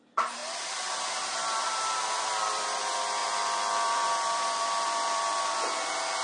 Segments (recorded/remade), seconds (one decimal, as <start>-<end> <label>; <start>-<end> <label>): 0.0-0.4 recorded; 0.4-2.8 remade; 2.8-3.2 recorded; 3.2-5.4 remade; 5.4-6.2 recorded